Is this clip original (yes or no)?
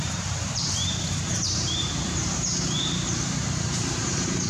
no